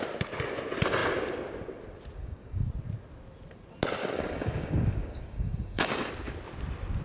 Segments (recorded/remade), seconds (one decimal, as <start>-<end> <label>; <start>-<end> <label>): 0.0-2.2 recorded; 2.2-2.7 remade; 2.7-4.0 recorded; 4.0-6.1 remade; 6.1-7.0 recorded